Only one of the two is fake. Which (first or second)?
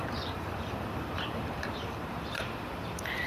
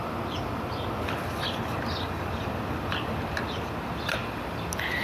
first